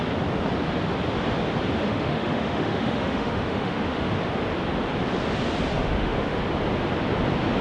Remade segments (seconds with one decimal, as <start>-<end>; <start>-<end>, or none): 1.8-4.1; 5.7-6.4